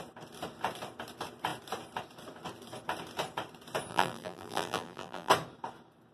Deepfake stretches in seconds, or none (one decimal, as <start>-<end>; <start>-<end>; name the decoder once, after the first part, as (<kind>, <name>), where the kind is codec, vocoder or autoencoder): 3.9-5.3 (vocoder, BigVGAN v2)